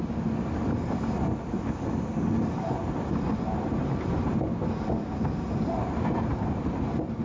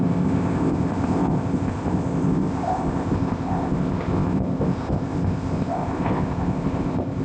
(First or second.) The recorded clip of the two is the first